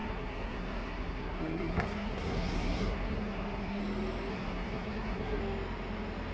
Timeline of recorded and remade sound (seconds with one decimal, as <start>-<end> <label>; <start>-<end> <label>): 0.0-3.8 remade; 3.8-4.3 recorded; 4.3-5.4 remade; 5.4-6.3 recorded